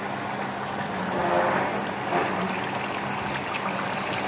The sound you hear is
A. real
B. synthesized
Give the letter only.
A